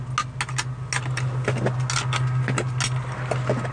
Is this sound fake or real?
real